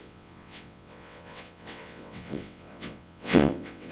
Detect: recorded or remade remade